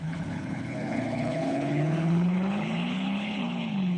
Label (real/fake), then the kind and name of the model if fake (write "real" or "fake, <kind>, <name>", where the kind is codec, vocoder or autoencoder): fake, codec, HILCodec